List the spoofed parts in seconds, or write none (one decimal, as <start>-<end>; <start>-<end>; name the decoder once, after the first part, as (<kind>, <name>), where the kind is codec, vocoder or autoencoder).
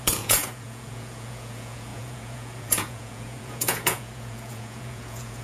0.0-5.4 (vocoder, Vocos)